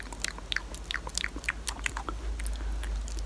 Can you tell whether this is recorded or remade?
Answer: recorded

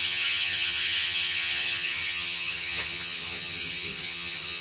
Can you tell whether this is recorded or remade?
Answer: remade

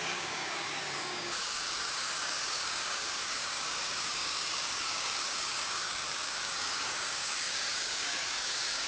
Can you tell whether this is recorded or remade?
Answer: remade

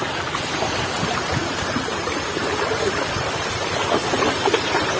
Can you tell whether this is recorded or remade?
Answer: recorded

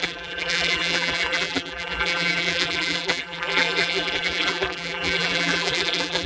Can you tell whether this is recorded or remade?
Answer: remade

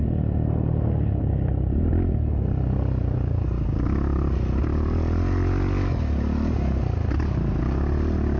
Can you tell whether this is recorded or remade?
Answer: recorded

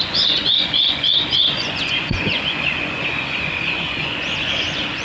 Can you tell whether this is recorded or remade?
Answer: remade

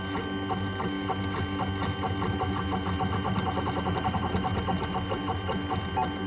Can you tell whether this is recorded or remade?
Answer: recorded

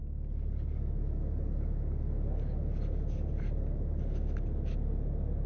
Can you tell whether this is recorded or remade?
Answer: recorded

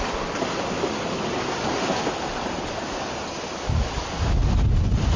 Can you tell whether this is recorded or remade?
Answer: recorded